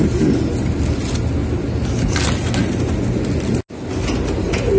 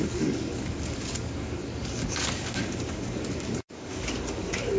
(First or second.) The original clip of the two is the first